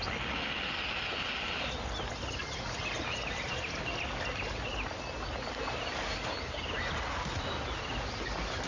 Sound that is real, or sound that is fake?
real